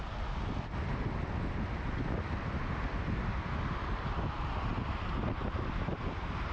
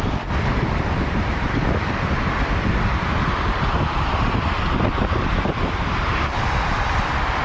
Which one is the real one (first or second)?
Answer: first